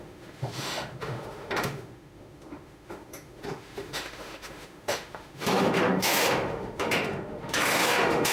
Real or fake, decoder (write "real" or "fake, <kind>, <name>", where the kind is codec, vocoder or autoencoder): fake, autoencoder, DAC-VAE